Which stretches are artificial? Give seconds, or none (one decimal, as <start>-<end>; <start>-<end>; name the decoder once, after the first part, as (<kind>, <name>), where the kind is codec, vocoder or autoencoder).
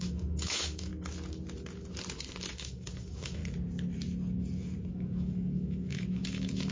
0.0-0.9 (autoencoder, DAC-VAE); 2.5-3.4; 4.9-6.7